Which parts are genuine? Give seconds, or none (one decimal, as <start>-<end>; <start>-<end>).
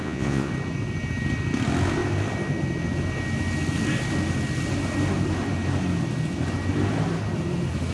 0.5-7.9